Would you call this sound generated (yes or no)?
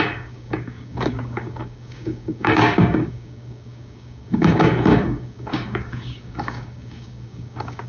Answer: yes